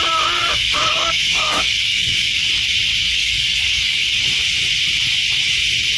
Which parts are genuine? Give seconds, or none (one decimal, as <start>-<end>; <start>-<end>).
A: 0.0-0.4; 2.5-3.0; 4.2-6.0